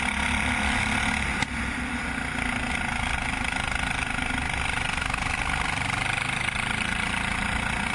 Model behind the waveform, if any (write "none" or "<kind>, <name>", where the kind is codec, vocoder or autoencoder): none